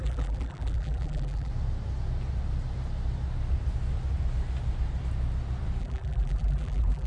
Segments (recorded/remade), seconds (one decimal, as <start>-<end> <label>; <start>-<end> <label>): 0.0-1.5 remade; 1.5-5.8 recorded; 5.8-7.1 remade